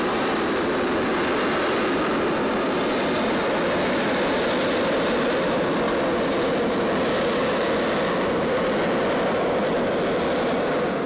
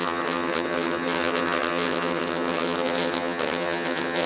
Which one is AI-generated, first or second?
second